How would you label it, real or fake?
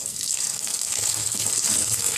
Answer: fake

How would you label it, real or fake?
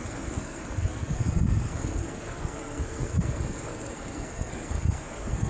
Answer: fake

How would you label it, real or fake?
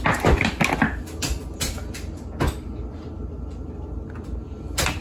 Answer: real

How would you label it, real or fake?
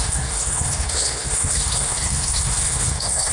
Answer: fake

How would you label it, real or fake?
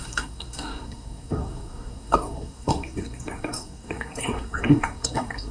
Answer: fake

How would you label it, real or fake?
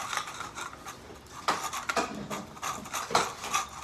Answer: real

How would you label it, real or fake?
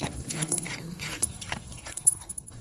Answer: fake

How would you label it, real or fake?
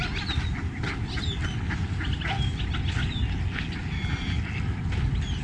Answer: real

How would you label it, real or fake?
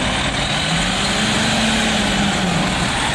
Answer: real